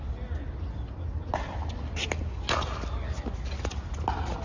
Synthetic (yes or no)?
no